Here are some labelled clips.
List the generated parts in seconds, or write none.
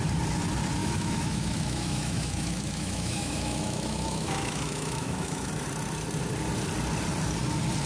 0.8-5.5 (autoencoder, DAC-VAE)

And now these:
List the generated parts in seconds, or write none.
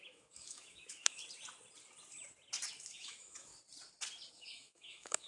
0.0-1.2 (autoencoder, DAC-VAE); 2.8-3.5; 4.3-5.3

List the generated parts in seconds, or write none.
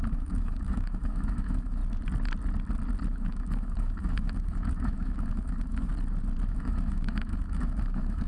0.0-1.8 (autoencoder, DAC-VAE); 3.1-5.9; 6.5-8.3